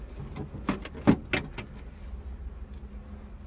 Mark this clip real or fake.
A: real